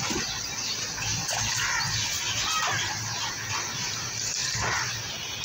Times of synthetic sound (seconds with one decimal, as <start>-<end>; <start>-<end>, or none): 4.4-4.9